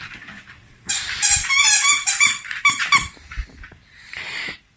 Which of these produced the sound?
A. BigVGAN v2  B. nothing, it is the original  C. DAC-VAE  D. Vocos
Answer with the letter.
A